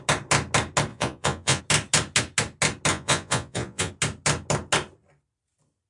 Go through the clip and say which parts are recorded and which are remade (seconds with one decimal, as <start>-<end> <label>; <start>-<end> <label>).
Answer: 0.0-0.9 recorded; 0.9-1.6 remade; 1.6-2.9 recorded; 2.9-3.9 remade; 3.9-5.9 recorded

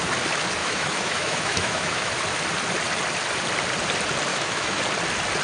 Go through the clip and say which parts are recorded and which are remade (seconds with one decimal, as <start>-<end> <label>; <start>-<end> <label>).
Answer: 0.0-0.6 recorded; 0.6-2.1 remade; 2.1-4.3 recorded; 4.3-4.8 remade; 4.8-5.4 recorded